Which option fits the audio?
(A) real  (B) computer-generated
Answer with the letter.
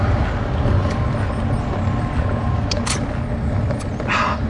A